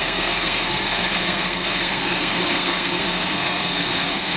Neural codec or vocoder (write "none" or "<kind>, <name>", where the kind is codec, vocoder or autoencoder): codec, SNAC